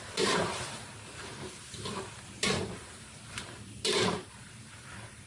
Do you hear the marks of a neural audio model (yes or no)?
yes